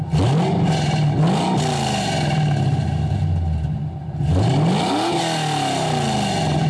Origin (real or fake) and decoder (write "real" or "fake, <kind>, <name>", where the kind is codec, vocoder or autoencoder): real